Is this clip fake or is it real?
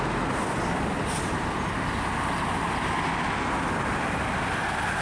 real